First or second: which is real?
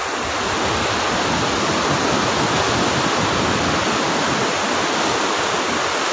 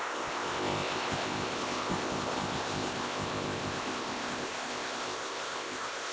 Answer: first